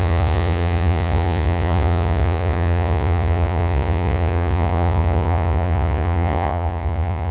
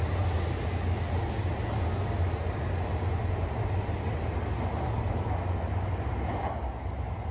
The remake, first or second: first